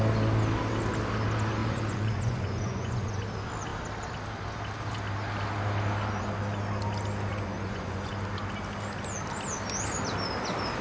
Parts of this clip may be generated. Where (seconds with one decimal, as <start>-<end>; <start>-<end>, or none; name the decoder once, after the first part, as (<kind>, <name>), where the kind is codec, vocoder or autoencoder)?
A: 1.6-3.2 (vocoder, Vocos); 7.3-8.2